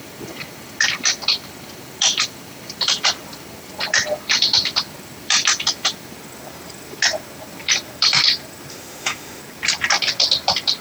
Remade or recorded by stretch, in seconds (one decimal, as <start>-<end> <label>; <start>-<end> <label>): 0.0-8.7 recorded; 8.7-9.4 remade; 9.4-10.8 recorded